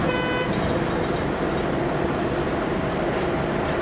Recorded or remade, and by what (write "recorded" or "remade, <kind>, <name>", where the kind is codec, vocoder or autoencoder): recorded